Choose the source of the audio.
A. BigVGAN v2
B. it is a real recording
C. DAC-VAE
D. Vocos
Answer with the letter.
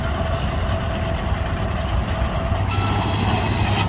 B